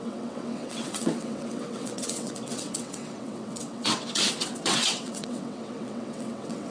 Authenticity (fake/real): fake